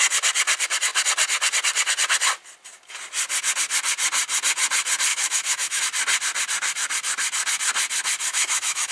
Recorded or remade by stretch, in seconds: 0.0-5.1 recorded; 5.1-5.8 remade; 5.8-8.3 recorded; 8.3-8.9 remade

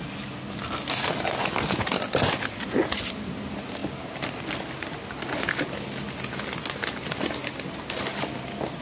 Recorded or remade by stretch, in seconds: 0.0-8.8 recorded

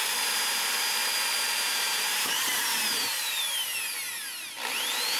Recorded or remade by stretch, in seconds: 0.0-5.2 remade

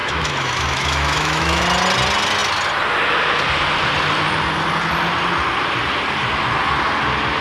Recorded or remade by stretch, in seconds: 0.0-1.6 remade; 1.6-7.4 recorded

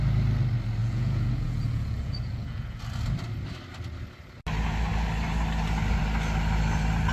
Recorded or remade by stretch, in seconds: 0.0-0.8 recorded; 0.8-2.8 remade; 2.8-7.1 recorded

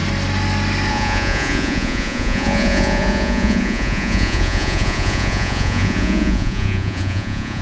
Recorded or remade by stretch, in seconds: 0.0-0.9 recorded; 0.9-7.6 remade

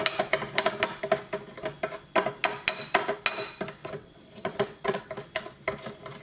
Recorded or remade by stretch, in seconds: 0.0-3.8 recorded; 3.8-5.1 remade; 5.1-6.2 recorded

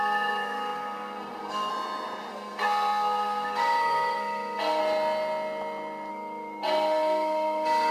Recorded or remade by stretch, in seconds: 0.0-1.7 remade; 1.7-2.3 recorded; 2.3-4.8 remade; 4.8-6.1 recorded; 6.1-7.9 remade